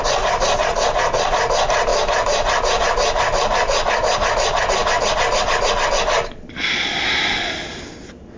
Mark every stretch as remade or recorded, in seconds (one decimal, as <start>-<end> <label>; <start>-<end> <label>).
0.0-8.4 recorded